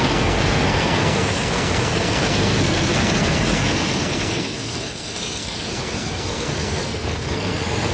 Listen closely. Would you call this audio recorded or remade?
remade